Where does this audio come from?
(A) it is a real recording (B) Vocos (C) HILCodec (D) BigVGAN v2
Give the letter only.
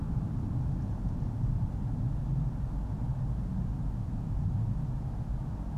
A